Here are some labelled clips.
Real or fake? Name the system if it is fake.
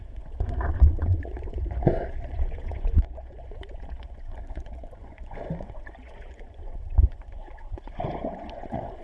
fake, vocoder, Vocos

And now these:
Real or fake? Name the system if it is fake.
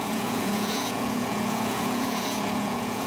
fake, vocoder, Vocos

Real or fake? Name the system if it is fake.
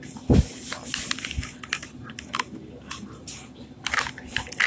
real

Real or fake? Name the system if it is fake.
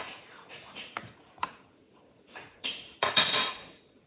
fake, vocoder, Vocos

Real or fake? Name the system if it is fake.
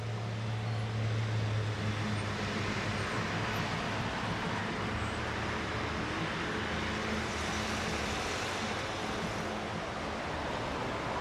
real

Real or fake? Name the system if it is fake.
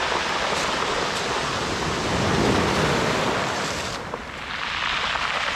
real